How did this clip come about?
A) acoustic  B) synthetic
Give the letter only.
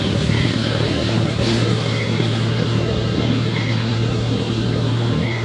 B